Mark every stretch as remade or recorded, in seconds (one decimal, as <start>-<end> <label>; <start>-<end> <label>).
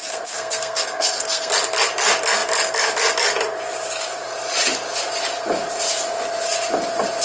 0.0-1.5 remade; 1.5-7.2 recorded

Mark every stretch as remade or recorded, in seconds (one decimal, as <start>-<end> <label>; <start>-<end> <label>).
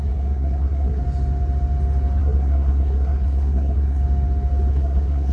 0.0-1.0 remade; 1.0-2.2 recorded; 2.2-4.0 remade; 4.0-4.7 recorded; 4.7-5.3 remade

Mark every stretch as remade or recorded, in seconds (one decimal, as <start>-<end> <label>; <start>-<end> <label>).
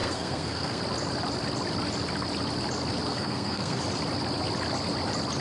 0.0-0.8 remade; 0.8-3.1 recorded; 3.1-3.8 remade; 3.8-5.4 recorded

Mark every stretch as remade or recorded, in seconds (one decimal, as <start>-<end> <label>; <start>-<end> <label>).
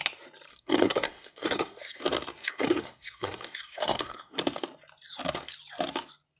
0.0-0.5 recorded; 0.5-2.0 remade; 2.0-2.4 recorded; 2.4-4.4 remade; 4.4-6.4 recorded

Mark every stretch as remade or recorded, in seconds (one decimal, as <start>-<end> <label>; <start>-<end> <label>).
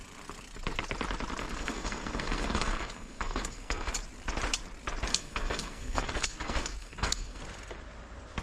0.0-1.4 recorded; 1.4-3.9 remade; 3.9-5.1 recorded; 5.1-7.4 remade; 7.4-8.4 recorded